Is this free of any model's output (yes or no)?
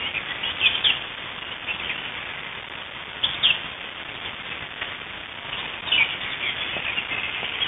yes